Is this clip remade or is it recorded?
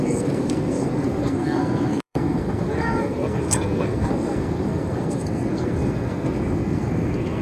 remade